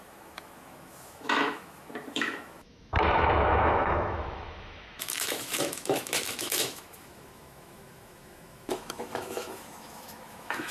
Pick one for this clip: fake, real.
fake